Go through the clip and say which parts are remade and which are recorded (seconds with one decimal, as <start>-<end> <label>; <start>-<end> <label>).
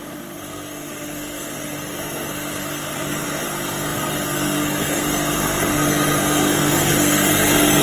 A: 0.0-7.8 remade